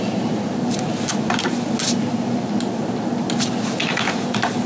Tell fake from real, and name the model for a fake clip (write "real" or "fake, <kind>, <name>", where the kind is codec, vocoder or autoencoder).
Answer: real